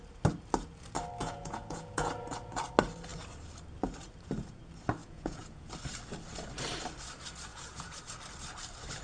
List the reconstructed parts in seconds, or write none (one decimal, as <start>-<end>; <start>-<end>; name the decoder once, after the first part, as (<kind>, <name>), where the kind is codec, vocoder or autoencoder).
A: 1.2-2.1 (vocoder, Vocos); 5.0-5.7; 7.5-8.0